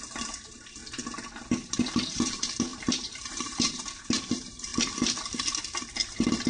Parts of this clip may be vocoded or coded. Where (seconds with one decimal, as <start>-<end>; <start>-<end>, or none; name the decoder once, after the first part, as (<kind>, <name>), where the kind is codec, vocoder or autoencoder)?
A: 0.0-0.8 (vocoder, BigVGAN v2); 1.5-4.7; 5.9-6.5